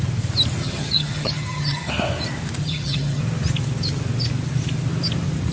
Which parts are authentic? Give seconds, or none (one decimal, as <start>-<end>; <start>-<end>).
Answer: 0.0-0.6; 1.9-2.6; 3.2-5.5